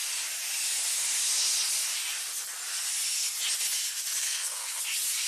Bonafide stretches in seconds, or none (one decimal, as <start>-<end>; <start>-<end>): 0.0-4.2; 4.8-5.3